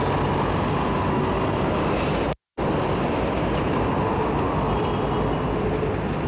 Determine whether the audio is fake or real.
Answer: real